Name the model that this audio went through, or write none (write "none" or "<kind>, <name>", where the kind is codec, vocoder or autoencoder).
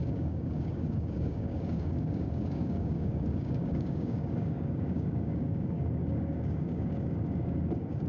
codec, DAC